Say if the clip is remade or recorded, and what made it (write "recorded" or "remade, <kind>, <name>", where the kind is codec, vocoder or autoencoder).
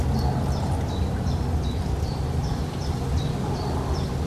recorded